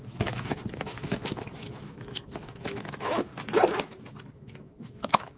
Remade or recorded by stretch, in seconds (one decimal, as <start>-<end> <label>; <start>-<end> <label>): 0.0-3.3 remade; 3.3-4.3 recorded; 4.3-5.4 remade